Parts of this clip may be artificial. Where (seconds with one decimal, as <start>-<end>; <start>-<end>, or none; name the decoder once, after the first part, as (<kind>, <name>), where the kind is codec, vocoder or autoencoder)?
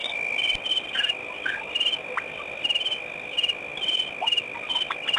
none